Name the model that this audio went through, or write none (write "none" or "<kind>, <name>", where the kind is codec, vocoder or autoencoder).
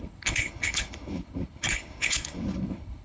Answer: codec, HILCodec